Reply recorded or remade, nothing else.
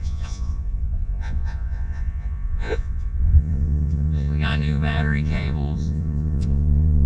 remade